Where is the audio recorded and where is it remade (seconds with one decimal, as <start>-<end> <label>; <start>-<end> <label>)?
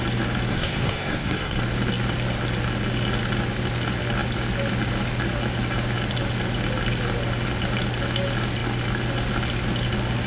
0.0-0.5 recorded; 0.5-1.6 remade; 1.6-10.3 recorded